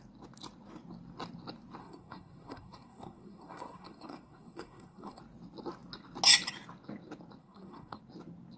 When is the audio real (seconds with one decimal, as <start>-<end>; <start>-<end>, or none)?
0.0-1.8; 5.2-7.4; 8.0-8.6

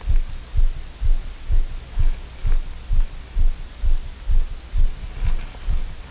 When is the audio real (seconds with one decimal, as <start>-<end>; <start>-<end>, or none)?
0.0-6.1

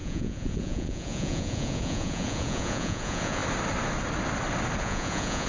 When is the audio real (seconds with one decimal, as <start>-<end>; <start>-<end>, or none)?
3.4-4.8

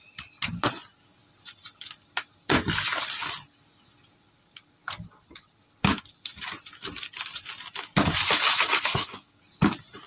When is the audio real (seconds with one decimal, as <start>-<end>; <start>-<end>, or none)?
0.0-8.9; 9.4-10.1

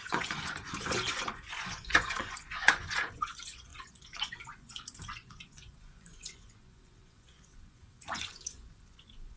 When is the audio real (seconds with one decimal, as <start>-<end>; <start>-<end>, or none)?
none

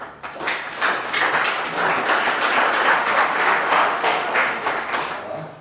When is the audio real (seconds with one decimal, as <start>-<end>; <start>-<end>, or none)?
0.0-2.9; 4.7-5.6

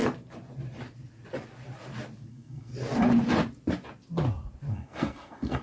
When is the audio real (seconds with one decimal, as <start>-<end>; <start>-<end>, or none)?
0.0-2.3; 2.7-4.7

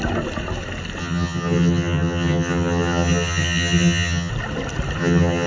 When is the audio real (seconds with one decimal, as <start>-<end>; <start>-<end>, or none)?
0.0-1.0; 4.3-5.0